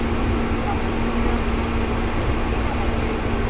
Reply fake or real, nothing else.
real